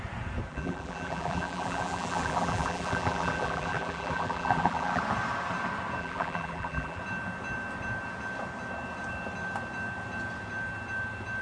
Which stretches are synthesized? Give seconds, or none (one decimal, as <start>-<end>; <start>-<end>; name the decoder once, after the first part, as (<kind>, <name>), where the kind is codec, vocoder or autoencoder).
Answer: 0.5-5.0 (vocoder, BigVGAN v2); 6.0-7.0